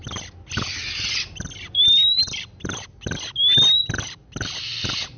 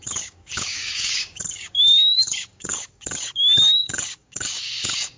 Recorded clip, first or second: first